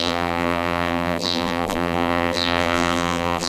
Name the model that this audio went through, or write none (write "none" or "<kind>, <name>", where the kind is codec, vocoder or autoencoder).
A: vocoder, BigVGAN v2